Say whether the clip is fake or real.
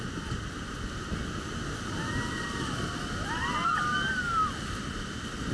real